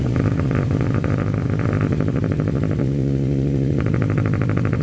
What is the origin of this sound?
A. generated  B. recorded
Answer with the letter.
A